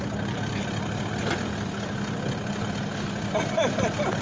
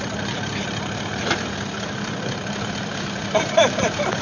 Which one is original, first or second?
first